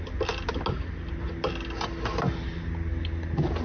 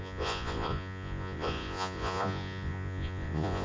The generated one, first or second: second